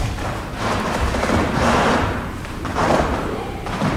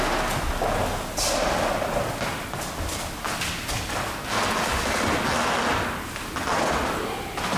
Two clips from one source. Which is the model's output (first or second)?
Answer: first